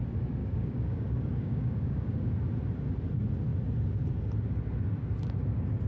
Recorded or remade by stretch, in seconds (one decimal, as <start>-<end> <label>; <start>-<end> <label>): 0.0-0.4 recorded; 0.4-2.3 remade; 2.3-5.9 recorded